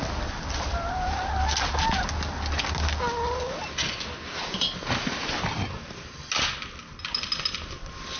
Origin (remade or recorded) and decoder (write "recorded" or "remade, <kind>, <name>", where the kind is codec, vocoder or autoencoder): recorded